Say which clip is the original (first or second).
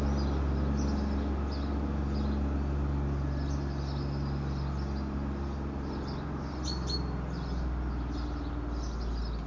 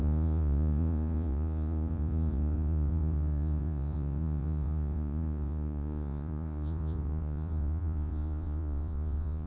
first